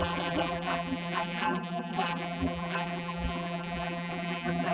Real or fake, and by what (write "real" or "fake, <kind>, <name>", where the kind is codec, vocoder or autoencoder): fake, vocoder, BigVGAN v2